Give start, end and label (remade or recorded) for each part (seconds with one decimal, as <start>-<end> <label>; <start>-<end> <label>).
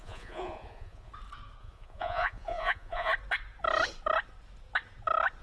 0.0-1.1 remade; 1.1-1.6 recorded; 1.6-3.1 remade; 3.1-5.4 recorded